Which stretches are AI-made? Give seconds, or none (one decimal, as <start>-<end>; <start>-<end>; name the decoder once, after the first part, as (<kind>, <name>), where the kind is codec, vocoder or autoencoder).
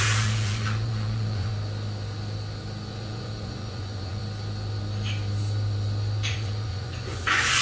0.0-1.5 (vocoder, Vocos); 2.9-4.2; 6.3-7.6